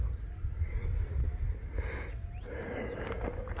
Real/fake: real